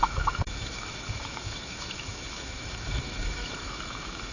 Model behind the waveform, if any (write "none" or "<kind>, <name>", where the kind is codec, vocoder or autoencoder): autoencoder, DAC-VAE